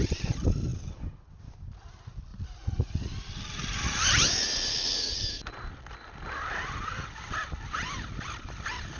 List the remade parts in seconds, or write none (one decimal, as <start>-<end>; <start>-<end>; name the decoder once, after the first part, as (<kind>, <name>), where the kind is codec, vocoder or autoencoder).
2.3-3.1 (vocoder, Vocos)